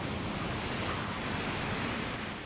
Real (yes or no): yes